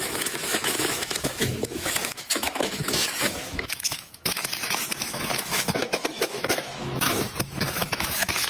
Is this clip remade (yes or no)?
yes